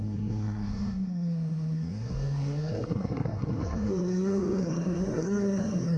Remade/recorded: remade